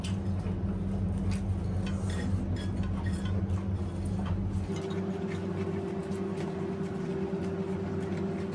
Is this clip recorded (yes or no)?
yes